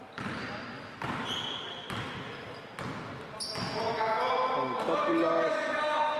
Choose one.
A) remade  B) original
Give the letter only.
B